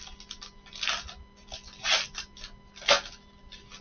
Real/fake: real